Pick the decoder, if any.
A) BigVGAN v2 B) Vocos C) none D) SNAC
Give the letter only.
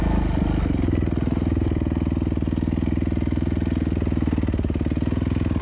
C